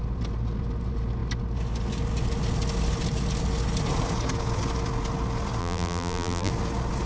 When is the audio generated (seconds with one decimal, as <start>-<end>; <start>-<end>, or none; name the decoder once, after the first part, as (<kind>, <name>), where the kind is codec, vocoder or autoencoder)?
5.6-6.5 (vocoder, BigVGAN v2)